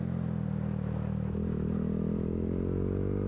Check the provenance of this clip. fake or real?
real